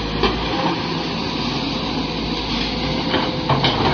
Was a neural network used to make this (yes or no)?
no